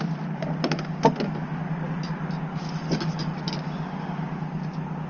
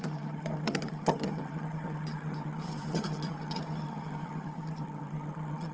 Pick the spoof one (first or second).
second